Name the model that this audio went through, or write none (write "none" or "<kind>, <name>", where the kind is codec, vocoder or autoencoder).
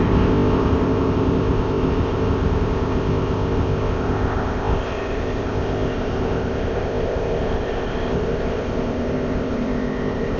codec, ZipCodec